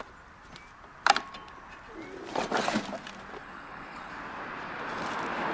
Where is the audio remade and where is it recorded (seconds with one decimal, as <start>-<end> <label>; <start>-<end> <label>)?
0.0-3.4 recorded; 3.4-4.1 remade; 4.1-5.5 recorded